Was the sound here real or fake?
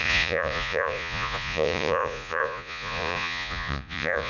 fake